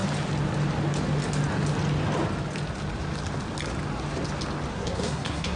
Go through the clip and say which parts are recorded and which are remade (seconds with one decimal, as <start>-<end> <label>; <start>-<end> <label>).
0.0-4.7 recorded; 4.7-5.6 remade